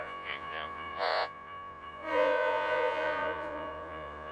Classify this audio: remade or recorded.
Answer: remade